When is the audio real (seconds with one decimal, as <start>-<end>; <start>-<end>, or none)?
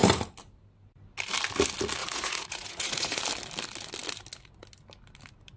0.0-2.0; 3.2-5.6